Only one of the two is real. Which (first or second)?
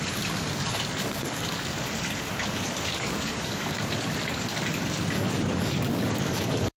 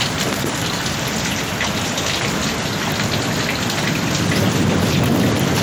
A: second